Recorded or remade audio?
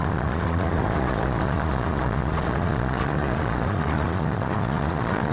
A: remade